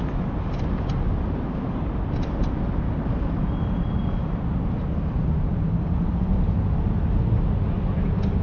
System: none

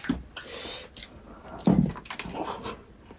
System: none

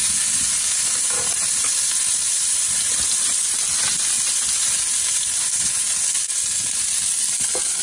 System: none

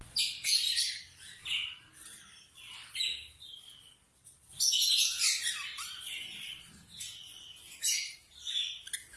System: none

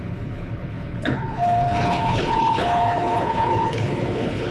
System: codec, HILCodec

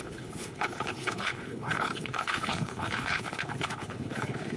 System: codec, HILCodec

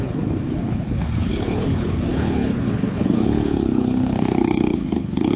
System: codec, HILCodec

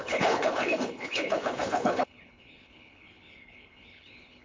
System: codec, HILCodec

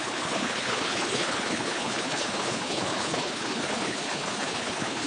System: codec, HILCodec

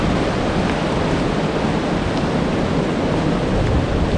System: none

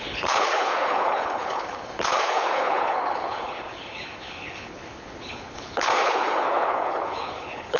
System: codec, HILCodec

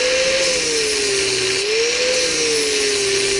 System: none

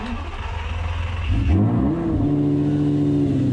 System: none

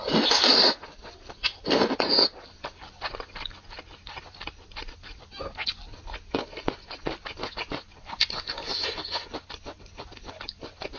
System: none